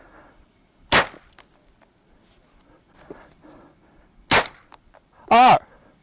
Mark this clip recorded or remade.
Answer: recorded